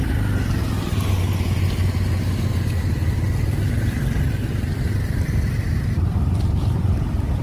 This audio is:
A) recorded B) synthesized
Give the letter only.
A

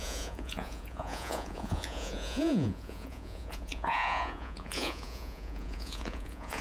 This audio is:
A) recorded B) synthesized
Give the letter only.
B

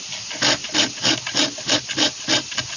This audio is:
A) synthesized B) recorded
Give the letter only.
B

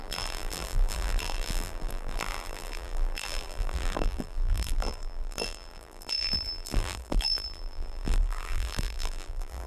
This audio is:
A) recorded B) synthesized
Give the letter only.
B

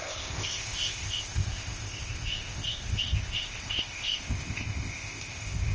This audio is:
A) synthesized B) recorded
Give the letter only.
A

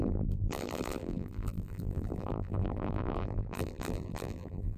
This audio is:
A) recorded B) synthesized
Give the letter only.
B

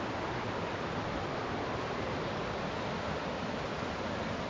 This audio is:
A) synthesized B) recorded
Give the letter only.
B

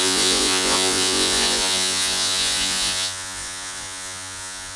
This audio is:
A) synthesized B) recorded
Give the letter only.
A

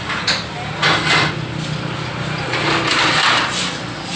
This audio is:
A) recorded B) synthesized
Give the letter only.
A